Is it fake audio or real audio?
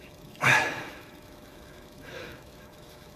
fake